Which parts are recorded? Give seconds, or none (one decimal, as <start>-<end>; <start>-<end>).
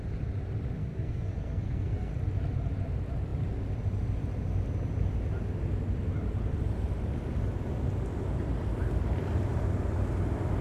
0.0-0.8; 2.1-10.6